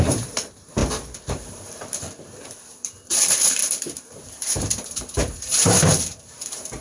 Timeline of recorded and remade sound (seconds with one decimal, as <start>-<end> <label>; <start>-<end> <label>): 0.0-0.8 remade; 0.8-1.3 recorded; 1.3-6.8 remade